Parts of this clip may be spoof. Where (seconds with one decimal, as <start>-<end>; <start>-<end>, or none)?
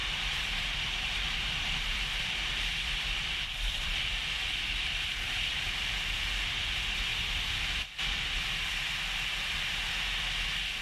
0.0-5.1; 7.1-7.8